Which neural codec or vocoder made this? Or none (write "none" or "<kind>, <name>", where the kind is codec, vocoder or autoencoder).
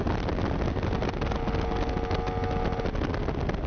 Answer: none